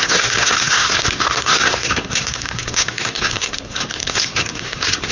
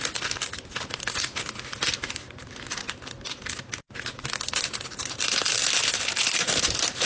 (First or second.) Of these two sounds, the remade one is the first